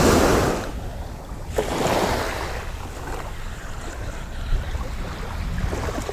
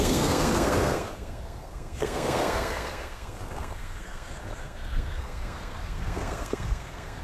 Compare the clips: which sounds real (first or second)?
first